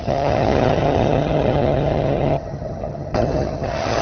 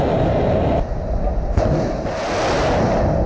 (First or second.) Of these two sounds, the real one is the second